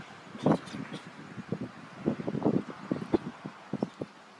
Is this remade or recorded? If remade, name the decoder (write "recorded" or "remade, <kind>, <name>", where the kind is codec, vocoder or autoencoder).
recorded